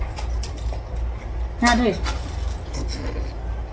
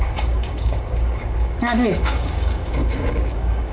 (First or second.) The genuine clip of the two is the first